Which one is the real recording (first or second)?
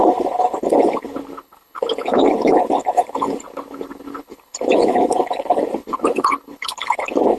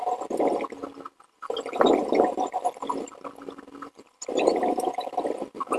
second